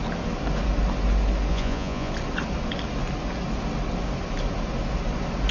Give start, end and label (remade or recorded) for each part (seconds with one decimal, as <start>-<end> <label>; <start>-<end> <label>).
0.0-1.5 recorded; 1.5-2.1 remade; 2.1-5.5 recorded